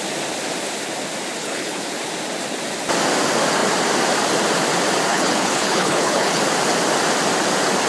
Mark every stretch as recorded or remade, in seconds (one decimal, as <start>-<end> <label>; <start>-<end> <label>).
0.0-1.4 recorded; 1.4-2.0 remade; 2.0-5.1 recorded; 5.1-6.4 remade; 6.4-7.9 recorded